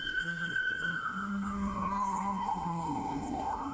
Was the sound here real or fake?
fake